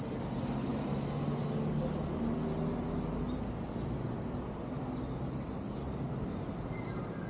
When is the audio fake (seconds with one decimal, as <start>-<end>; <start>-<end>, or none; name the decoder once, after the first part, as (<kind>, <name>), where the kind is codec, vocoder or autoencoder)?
none